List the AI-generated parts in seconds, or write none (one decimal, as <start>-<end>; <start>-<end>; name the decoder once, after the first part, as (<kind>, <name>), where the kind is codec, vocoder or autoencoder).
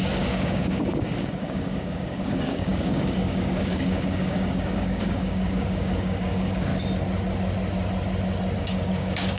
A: 0.0-6.7 (codec, DAC); 8.6-9.4